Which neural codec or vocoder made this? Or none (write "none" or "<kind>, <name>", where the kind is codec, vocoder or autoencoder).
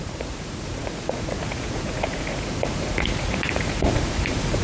vocoder, Vocos